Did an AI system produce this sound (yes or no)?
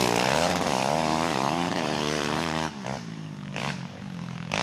yes